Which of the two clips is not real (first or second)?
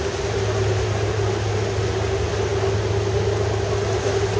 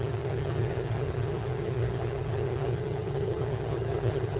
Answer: second